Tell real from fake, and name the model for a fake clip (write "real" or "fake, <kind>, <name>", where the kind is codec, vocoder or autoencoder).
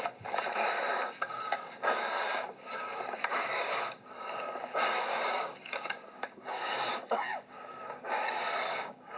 fake, codec, DAC